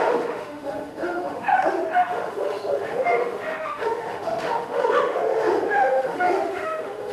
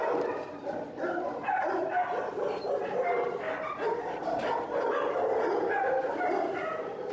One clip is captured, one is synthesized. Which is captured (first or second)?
second